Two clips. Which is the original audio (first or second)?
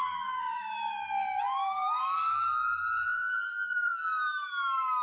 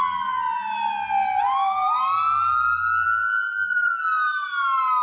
second